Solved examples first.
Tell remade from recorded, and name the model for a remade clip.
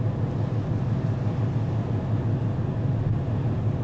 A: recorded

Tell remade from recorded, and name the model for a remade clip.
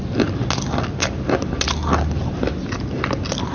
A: recorded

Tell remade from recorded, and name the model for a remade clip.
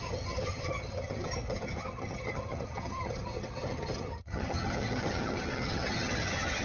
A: remade, vocoder, HiFi-GAN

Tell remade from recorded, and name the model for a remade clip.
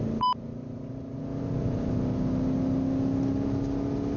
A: recorded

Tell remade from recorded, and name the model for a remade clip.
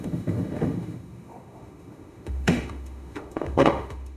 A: remade, autoencoder, DAC-VAE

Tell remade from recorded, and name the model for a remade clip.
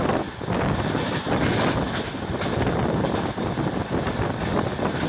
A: recorded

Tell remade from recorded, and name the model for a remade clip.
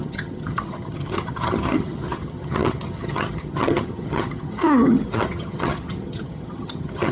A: remade, vocoder, HiFi-GAN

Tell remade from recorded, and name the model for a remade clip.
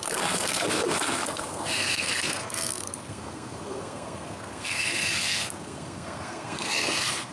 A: remade, codec, SNAC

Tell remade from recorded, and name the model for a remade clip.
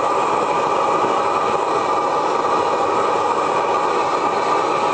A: recorded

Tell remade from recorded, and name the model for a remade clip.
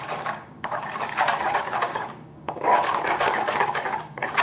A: remade, codec, DAC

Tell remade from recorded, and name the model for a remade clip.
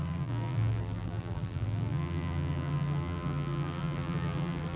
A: remade, vocoder, BigVGAN v2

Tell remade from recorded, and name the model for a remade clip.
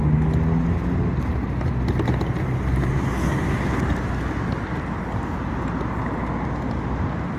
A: recorded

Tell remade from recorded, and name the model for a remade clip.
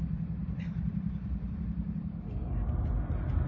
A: recorded